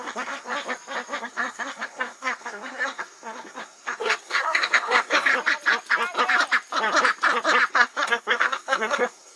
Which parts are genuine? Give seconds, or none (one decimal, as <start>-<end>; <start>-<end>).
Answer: 0.5-1.2; 5.3-7.7